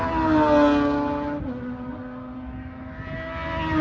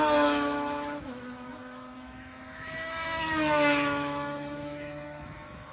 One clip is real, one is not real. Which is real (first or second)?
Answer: first